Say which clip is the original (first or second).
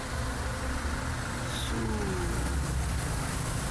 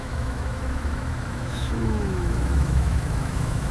first